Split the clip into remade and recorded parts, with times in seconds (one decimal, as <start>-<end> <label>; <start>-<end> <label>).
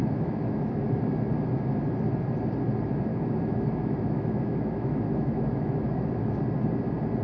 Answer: 0.0-1.0 remade; 1.0-3.1 recorded; 3.1-6.1 remade; 6.1-7.2 recorded